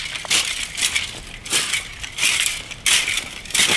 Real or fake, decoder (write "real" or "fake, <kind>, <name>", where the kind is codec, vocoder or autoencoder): real